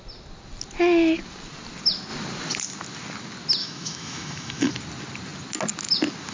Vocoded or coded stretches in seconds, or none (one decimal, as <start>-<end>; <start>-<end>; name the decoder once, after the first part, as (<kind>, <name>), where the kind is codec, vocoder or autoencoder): 3.6-4.7 (autoencoder, DAC-VAE)